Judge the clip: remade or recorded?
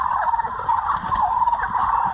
recorded